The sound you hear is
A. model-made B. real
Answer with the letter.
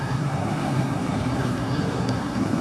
A